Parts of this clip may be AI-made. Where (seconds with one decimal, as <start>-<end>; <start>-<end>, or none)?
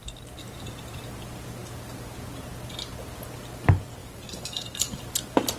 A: 4.0-5.0